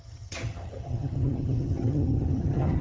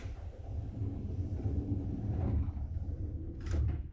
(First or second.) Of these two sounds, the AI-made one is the first